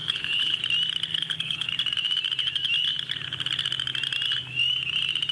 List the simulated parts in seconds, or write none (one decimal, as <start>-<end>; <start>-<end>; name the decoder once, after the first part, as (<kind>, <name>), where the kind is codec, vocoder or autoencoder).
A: 0.0-0.6 (codec, HILCodec); 1.1-1.7